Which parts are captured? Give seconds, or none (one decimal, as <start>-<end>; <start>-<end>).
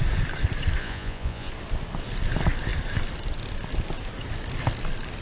0.0-0.8; 1.5-5.2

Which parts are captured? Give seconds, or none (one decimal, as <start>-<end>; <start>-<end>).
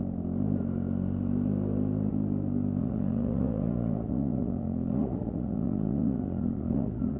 0.0-2.8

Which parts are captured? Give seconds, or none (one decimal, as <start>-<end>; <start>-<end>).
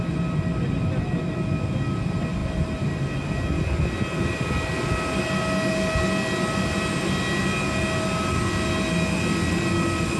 0.0-10.2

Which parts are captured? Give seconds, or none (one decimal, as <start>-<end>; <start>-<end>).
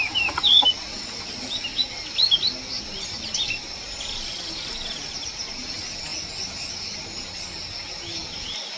0.0-8.8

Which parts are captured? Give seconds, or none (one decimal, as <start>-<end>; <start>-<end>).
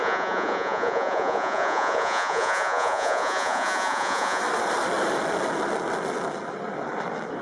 4.4-7.4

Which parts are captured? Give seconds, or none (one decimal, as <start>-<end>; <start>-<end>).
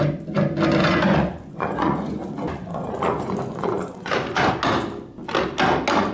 0.0-0.8; 4.5-6.1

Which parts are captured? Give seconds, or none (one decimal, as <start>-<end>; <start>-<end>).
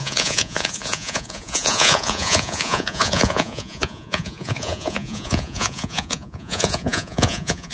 none